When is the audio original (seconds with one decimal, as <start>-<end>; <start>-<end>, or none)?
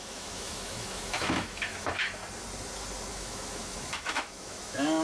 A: 2.2-3.1